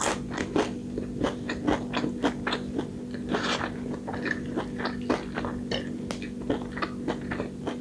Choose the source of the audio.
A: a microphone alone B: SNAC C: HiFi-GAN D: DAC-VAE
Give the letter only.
A